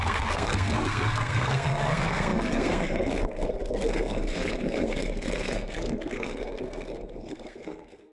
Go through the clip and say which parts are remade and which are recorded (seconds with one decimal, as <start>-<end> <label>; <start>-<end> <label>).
0.0-8.1 remade